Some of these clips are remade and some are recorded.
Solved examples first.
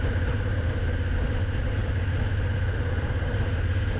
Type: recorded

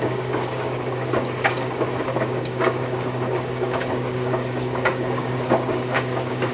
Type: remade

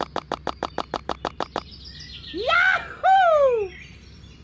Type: recorded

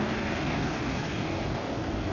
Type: remade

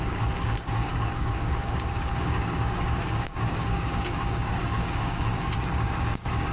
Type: remade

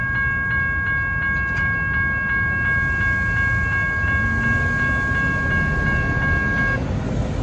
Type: recorded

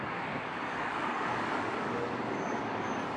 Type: remade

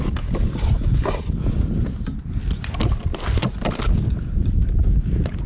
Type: recorded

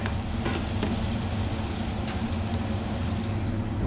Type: recorded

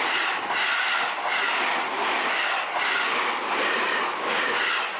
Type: recorded